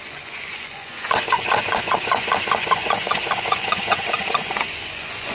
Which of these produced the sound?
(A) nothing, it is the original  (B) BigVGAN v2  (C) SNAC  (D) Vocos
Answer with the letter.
D